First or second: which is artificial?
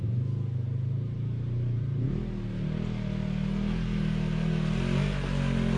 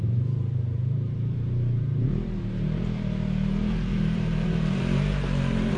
second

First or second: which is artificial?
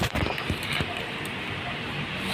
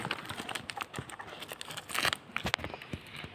first